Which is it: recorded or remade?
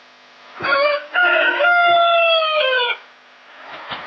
recorded